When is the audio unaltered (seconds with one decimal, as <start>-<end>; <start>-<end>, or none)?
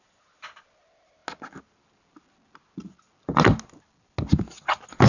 0.0-5.1